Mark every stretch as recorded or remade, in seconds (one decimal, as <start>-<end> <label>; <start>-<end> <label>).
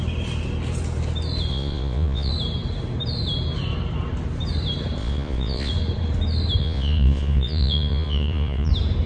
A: 0.0-1.5 recorded; 1.5-2.3 remade; 2.3-5.0 recorded; 5.0-5.7 remade; 5.7-6.6 recorded; 6.6-8.7 remade; 8.7-9.1 recorded